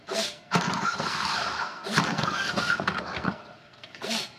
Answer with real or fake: fake